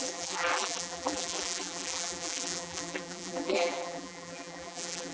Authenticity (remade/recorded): remade